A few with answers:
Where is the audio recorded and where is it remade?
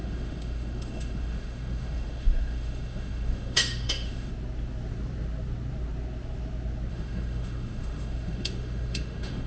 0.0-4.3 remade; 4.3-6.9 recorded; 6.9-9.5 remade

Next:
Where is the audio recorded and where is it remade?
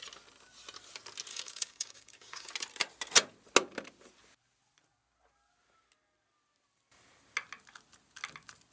0.0-1.3 recorded; 1.3-2.5 remade; 2.5-8.7 recorded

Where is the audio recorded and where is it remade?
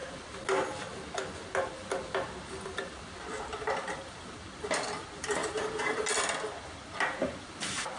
0.0-8.0 recorded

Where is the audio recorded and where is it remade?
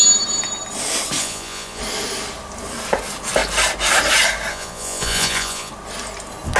0.0-1.2 recorded; 1.2-1.8 remade; 1.8-4.5 recorded; 4.5-5.7 remade; 5.7-6.6 recorded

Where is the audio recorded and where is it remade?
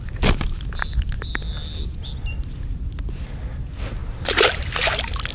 0.0-5.3 recorded